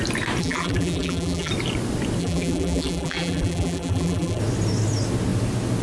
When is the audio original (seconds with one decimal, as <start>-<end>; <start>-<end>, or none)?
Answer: 0.0-0.4; 1.5-2.2; 4.4-5.8